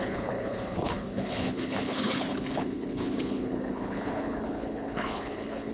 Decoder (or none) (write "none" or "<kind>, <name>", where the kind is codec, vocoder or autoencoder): codec, HILCodec